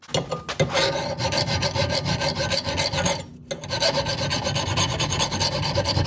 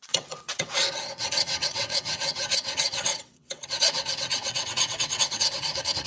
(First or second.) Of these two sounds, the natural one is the first